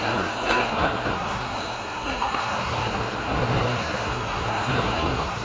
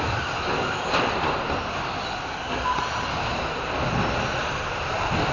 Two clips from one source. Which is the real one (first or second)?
second